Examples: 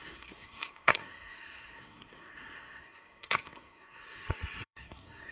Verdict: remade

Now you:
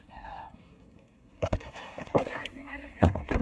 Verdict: remade